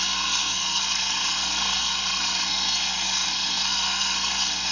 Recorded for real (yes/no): no